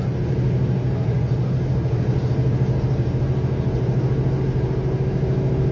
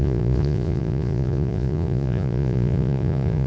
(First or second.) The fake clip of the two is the second